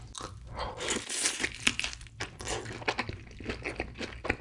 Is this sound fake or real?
real